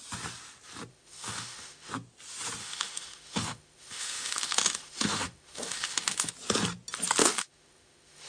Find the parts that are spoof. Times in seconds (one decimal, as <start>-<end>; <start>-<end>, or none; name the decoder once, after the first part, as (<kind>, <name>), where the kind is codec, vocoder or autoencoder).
0.9-1.9 (autoencoder, DAC-VAE); 2.6-6.3; 7.2-8.3